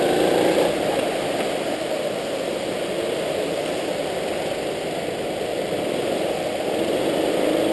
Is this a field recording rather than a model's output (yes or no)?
no